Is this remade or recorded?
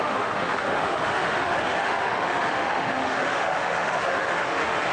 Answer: remade